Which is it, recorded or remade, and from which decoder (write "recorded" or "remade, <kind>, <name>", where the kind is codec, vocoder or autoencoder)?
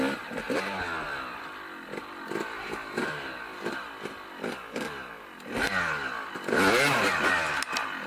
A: recorded